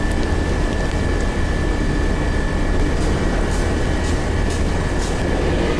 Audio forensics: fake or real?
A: real